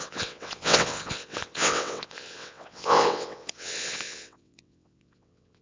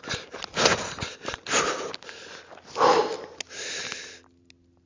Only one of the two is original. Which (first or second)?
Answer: second